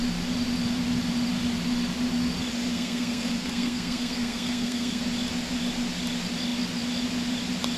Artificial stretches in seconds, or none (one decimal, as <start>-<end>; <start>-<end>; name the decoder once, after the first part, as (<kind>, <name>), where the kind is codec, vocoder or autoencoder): 2.7-5.0 (codec, SNAC)